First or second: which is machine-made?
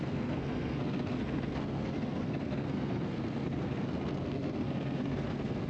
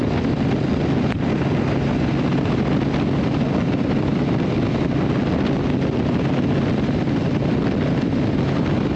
first